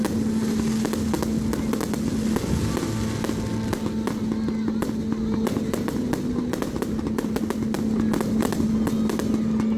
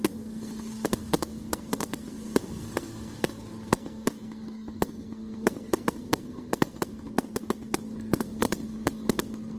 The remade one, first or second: second